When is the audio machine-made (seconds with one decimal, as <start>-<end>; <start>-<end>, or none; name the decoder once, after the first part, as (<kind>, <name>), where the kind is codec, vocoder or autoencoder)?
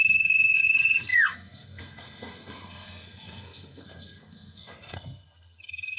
0.0-6.0 (codec, SNAC)